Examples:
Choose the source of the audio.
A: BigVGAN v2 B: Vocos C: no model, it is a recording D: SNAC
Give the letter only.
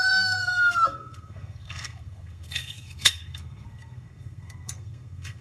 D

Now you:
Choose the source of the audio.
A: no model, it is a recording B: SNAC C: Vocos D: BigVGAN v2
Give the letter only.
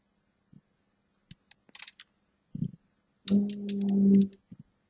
A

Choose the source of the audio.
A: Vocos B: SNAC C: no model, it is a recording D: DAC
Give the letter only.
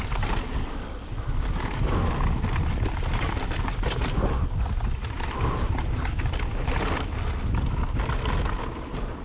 C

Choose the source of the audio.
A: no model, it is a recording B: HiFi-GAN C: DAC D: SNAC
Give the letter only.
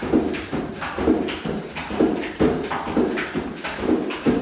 A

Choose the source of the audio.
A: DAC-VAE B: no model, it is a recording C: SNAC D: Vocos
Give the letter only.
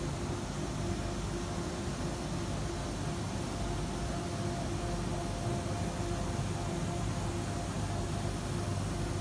B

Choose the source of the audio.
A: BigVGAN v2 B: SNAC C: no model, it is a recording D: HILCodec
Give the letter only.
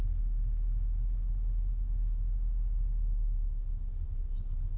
C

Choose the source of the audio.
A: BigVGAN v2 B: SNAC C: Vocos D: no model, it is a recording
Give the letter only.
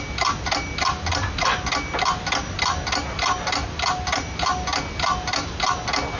D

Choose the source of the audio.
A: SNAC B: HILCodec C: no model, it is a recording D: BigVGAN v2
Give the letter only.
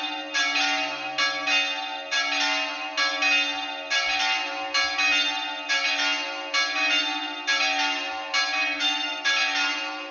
C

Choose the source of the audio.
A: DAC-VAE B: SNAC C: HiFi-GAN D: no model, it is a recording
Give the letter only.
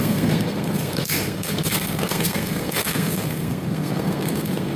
B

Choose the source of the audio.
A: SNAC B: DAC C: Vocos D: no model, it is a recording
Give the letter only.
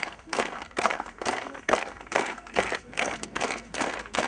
A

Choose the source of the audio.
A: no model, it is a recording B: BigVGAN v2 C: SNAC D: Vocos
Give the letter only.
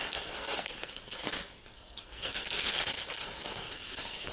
C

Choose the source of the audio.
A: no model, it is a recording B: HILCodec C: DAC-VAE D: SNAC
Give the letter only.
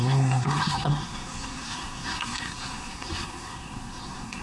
D